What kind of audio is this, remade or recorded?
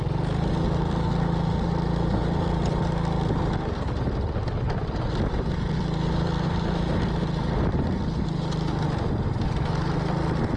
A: recorded